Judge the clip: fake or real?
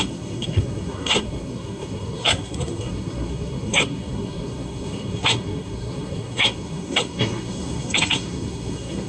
fake